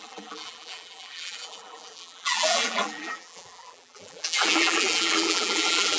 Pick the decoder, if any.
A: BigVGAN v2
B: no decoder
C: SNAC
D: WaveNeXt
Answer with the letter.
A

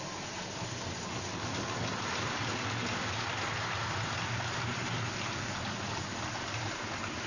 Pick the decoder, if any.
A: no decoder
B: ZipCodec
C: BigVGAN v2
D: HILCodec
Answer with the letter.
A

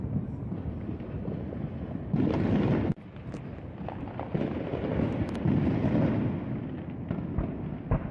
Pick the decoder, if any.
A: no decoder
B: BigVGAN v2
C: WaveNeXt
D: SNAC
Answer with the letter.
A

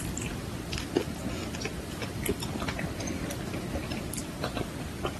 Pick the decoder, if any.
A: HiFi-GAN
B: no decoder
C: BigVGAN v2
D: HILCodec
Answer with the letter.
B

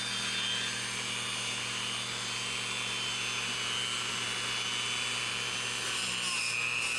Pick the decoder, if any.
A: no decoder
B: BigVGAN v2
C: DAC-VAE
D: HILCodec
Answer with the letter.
A